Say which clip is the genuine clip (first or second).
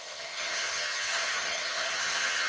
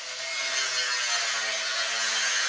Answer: second